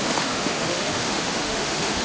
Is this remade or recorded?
remade